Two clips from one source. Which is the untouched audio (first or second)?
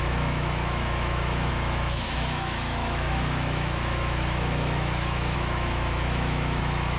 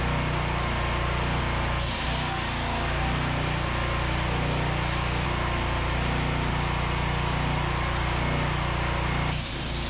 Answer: second